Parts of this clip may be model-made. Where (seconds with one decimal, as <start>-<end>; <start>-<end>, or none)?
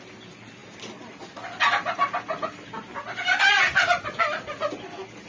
none